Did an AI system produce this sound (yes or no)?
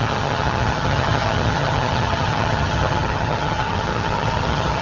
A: yes